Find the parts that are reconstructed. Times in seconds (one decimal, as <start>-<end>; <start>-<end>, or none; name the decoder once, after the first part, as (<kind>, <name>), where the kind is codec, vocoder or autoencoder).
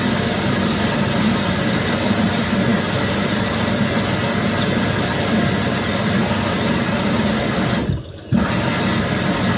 0.0-2.7 (vocoder, BigVGAN v2); 6.5-7.8; 9.0-9.6